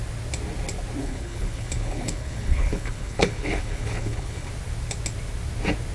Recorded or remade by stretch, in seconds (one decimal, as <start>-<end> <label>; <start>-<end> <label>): 0.0-1.0 recorded; 1.0-4.5 remade; 4.5-5.9 recorded